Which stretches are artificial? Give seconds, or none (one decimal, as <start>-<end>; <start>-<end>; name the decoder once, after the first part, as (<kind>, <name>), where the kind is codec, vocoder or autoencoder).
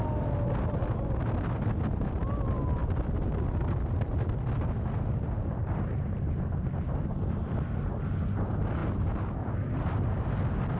8.8-10.1 (vocoder, BigVGAN v2)